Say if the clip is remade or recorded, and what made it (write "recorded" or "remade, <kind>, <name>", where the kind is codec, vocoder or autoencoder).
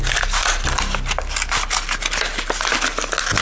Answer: recorded